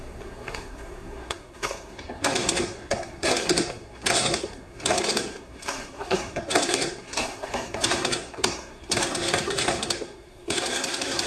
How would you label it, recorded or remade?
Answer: remade